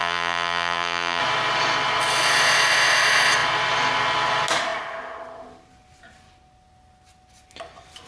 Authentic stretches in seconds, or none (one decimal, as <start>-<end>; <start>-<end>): 1.2-8.1